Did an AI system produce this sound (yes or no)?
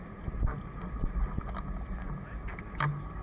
no